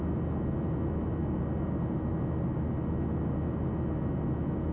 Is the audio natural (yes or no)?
yes